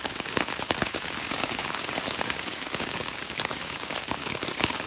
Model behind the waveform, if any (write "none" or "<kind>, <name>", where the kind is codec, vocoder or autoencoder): codec, DAC